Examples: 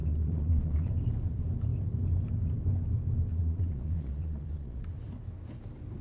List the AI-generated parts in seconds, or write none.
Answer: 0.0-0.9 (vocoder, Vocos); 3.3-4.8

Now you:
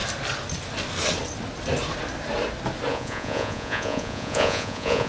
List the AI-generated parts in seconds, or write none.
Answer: 2.9-5.1 (vocoder, Vocos)

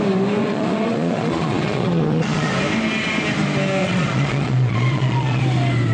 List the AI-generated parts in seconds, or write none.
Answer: 0.4-2.5 (vocoder, Vocos); 3.8-5.4

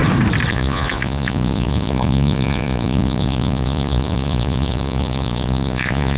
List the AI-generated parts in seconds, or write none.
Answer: 0.5-6.2 (vocoder, Vocos)

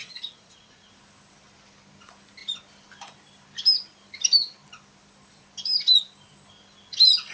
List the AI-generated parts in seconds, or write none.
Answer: 0.0-0.9 (vocoder, Vocos)